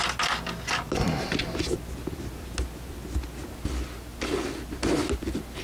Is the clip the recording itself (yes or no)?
yes